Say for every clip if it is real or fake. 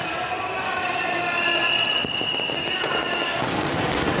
real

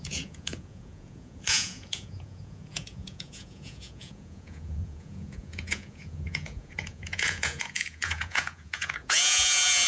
fake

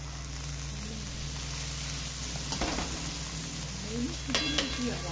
real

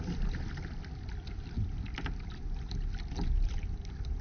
real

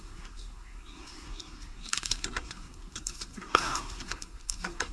fake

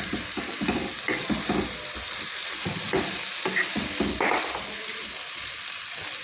real